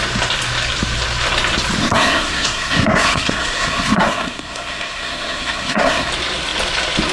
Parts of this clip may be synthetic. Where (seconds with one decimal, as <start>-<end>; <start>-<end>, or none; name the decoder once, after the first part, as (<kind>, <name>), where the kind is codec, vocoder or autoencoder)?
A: 1.8-6.1 (codec, SNAC)